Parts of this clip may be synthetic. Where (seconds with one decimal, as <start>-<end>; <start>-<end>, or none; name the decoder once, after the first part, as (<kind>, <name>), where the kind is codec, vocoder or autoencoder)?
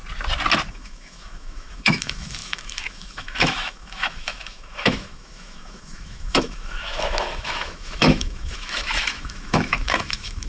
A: 0.7-10.5 (autoencoder, DAC-VAE)